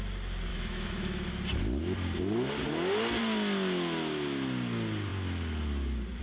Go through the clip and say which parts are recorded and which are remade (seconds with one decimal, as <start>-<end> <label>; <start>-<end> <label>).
0.0-0.5 recorded; 0.5-1.3 remade; 1.3-6.2 recorded